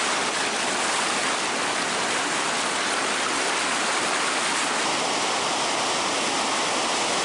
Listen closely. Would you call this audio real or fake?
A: real